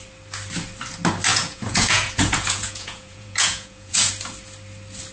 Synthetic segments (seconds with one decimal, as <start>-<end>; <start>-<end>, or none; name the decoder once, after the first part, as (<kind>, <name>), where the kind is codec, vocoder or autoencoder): 1.3-4.1 (vocoder, Vocos)